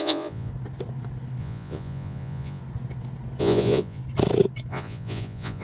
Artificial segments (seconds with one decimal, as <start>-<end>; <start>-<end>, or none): 0.0-0.5; 1.4-2.6; 3.4-4.0; 4.7-5.6